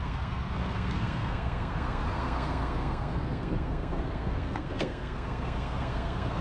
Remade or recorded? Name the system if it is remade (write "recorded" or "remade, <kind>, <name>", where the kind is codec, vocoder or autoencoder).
remade, codec, SNAC